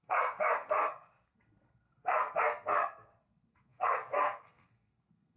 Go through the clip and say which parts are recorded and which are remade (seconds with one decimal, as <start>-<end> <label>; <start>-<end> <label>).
0.0-5.4 remade